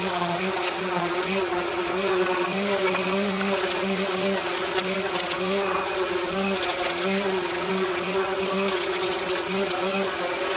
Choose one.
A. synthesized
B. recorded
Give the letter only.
A